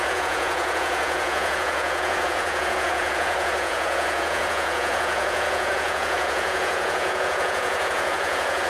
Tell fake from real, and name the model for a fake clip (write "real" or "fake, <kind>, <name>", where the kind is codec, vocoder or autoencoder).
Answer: fake, vocoder, Vocos